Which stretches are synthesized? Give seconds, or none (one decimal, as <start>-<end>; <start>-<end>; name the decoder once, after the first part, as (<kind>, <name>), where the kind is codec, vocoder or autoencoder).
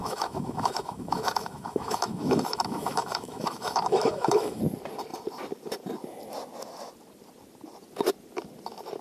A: 0.0-4.6 (autoencoder, DAC-VAE)